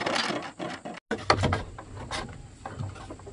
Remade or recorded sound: recorded